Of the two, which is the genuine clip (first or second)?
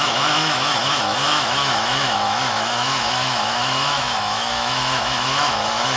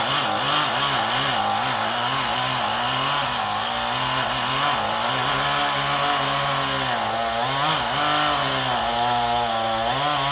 second